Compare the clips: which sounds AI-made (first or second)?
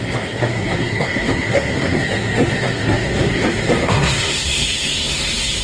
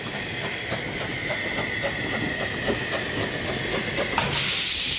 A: first